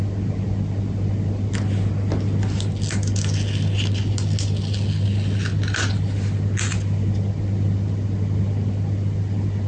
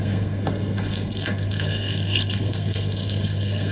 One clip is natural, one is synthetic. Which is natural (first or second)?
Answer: first